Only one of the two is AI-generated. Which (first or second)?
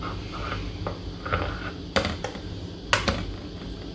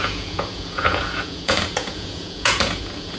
second